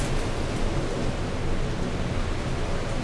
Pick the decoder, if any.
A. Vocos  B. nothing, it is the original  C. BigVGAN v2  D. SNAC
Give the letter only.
B